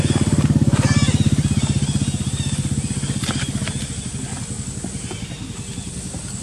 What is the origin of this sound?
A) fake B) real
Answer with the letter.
B